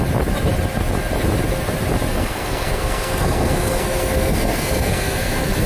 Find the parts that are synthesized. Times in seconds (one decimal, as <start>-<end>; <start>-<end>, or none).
2.1-5.7